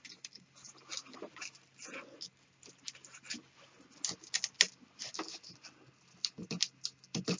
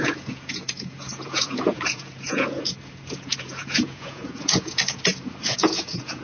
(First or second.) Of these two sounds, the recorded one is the first